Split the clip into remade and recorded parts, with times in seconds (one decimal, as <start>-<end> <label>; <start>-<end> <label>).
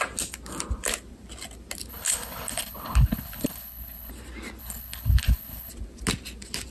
0.0-1.9 recorded; 1.9-4.1 remade; 4.1-4.6 recorded; 4.6-5.7 remade; 5.7-6.7 recorded